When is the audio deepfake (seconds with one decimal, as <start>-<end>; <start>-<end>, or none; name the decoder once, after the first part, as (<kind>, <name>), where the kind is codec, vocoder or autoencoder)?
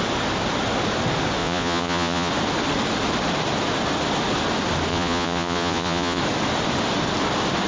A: 1.4-2.3 (vocoder, Vocos); 4.9-6.2